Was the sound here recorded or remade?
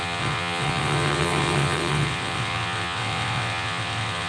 remade